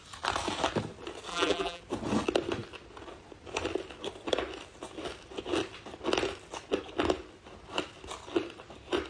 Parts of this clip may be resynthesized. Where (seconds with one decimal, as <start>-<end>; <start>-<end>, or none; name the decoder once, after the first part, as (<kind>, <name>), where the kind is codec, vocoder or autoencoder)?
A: 1.3-1.8 (vocoder, BigVGAN v2)